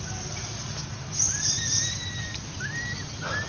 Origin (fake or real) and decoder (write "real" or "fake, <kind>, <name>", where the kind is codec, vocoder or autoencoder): real